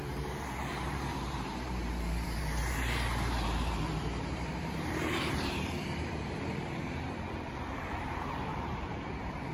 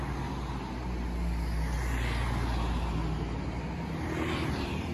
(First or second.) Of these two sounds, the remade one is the first